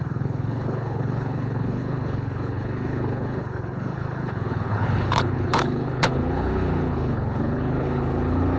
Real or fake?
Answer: fake